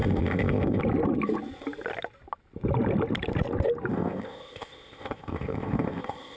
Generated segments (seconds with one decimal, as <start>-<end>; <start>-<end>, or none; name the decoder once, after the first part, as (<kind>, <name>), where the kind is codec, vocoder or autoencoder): 0.0-0.8 (codec, ZipCodec); 3.9-6.4